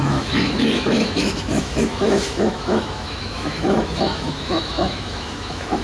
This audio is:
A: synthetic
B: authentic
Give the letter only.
A